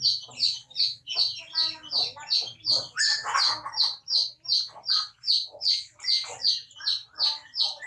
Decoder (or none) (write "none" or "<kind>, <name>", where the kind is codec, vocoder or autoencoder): none